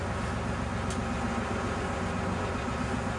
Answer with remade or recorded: recorded